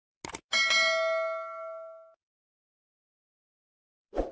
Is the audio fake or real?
real